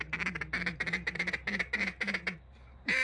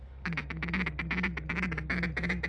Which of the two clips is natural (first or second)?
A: second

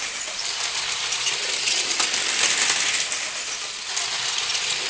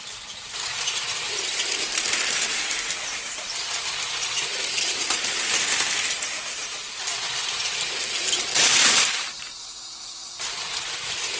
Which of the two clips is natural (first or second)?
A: first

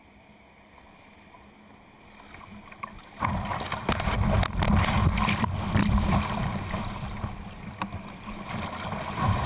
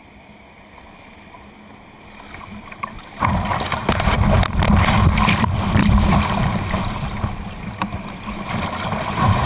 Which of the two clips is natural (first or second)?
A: first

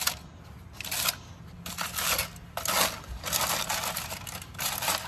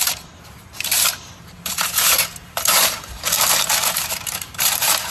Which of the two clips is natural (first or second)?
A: first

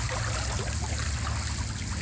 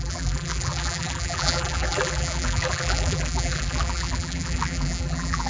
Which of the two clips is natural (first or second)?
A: first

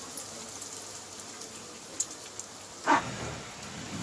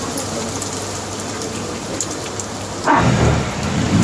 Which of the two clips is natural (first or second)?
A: first